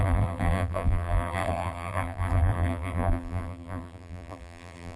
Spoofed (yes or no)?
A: yes